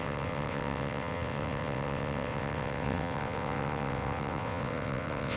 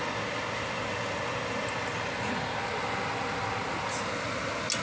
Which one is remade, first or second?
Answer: first